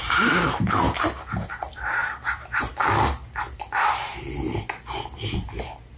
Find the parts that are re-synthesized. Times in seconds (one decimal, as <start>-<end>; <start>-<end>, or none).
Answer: none